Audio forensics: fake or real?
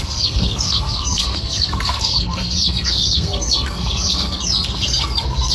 fake